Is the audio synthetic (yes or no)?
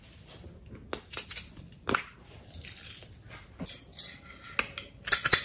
no